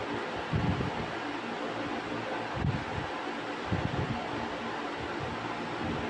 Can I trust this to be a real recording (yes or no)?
yes